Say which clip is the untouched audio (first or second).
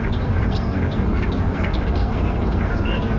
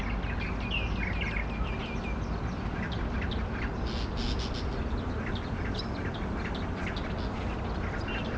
second